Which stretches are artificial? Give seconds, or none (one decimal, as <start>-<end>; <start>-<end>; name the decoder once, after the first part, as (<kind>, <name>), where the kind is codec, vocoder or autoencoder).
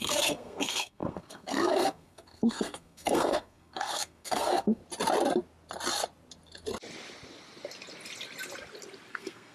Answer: 0.0-4.8 (codec, SNAC); 9.1-9.5